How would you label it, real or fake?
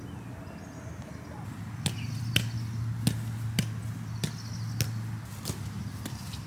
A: real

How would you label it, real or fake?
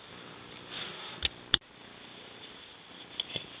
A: real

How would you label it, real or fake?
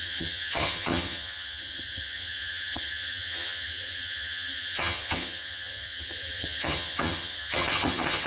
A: fake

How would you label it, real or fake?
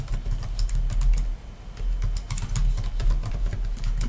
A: real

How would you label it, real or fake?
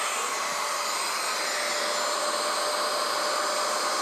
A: real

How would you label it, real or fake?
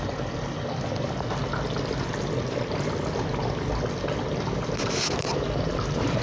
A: real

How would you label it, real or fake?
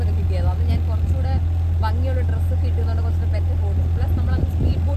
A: real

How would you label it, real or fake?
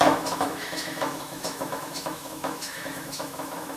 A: fake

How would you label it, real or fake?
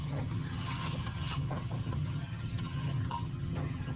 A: fake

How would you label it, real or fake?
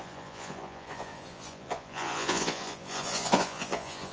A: fake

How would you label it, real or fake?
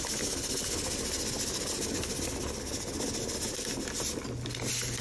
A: real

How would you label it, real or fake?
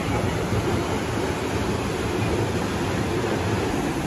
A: real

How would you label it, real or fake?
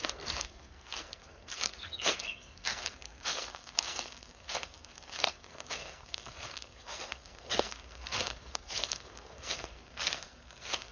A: fake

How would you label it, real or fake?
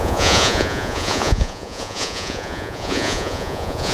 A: fake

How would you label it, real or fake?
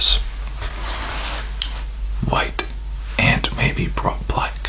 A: real